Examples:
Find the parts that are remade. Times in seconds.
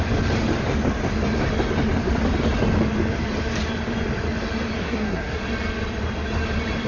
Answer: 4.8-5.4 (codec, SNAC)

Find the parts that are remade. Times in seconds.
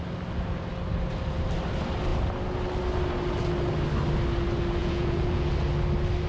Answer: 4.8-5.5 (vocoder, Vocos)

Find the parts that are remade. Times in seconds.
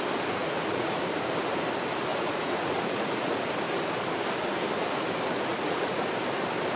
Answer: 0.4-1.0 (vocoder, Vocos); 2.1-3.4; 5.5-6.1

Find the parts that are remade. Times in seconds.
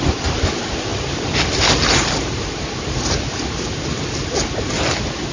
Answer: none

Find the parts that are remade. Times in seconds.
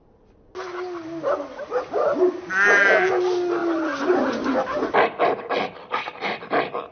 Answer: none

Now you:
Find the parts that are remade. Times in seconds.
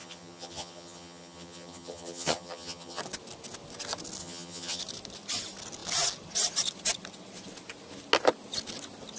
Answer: 0.0-3.0 (vocoder, HiFi-GAN); 4.2-4.8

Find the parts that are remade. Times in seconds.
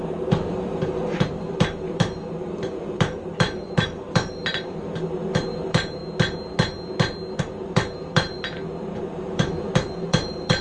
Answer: 0.0-6.0 (vocoder, BigVGAN v2); 7.4-10.6